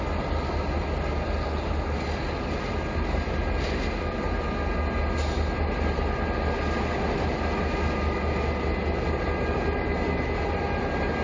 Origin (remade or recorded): recorded